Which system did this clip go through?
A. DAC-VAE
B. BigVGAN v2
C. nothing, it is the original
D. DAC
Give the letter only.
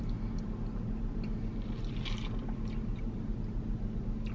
C